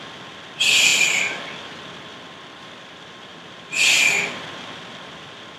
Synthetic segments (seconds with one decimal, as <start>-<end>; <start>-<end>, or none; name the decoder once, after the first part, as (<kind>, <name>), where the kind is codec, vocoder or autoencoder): 0.0-5.6 (vocoder, BigVGAN v2)